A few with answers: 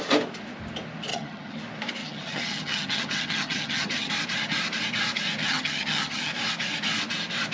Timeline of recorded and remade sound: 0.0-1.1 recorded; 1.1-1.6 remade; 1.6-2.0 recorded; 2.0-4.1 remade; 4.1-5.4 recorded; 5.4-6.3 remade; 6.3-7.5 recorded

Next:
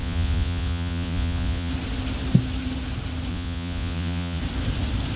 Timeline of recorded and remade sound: 0.0-1.7 remade; 1.7-3.3 recorded; 3.3-4.4 remade; 4.4-5.2 recorded

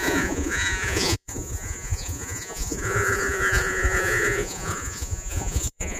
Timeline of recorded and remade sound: 0.0-6.0 remade